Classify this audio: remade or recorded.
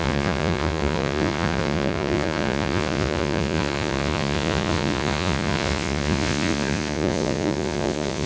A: remade